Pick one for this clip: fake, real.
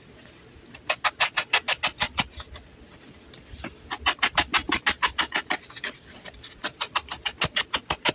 real